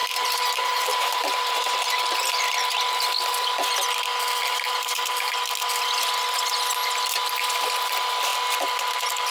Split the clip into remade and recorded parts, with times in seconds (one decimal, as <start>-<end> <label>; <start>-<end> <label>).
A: 0.0-2.4 remade; 2.4-4.4 recorded; 4.4-5.3 remade; 5.3-9.3 recorded